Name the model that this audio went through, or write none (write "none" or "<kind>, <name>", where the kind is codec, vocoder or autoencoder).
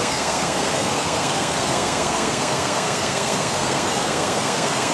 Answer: codec, SNAC